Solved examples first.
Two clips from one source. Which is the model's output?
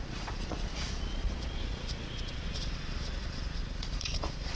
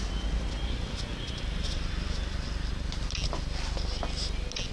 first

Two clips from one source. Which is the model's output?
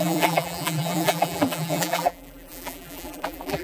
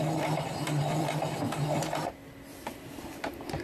first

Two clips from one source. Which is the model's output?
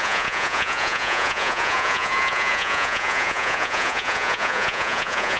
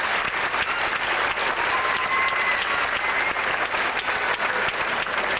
first